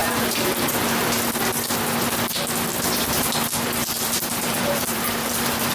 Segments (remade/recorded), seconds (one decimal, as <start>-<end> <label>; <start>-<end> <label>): 0.0-1.0 remade; 1.0-2.7 recorded; 2.7-3.3 remade; 3.3-3.8 recorded; 3.8-5.7 remade